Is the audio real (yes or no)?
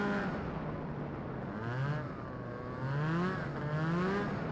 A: yes